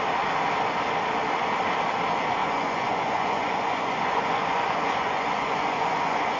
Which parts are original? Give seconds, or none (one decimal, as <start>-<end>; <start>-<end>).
0.0-2.4

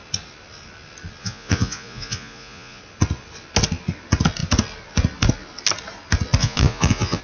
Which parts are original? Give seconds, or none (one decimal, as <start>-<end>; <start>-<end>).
0.0-1.2; 2.8-6.4